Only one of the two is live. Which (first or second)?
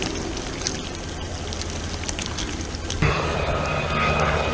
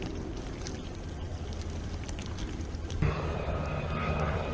first